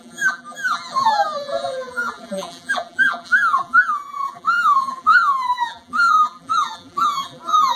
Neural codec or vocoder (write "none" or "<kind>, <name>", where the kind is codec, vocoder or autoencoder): vocoder, BigVGAN v2